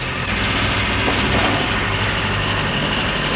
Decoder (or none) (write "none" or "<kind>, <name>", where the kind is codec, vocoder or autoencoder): none